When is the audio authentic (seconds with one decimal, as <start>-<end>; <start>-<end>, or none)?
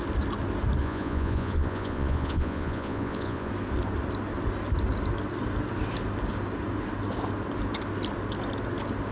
0.0-0.8; 3.5-9.1